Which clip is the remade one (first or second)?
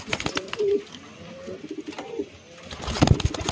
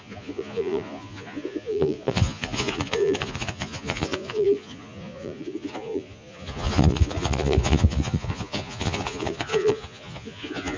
second